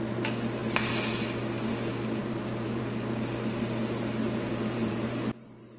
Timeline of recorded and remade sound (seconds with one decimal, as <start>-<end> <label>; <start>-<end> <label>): 0.0-2.2 recorded; 2.2-2.8 remade; 2.8-4.5 recorded; 4.5-5.8 remade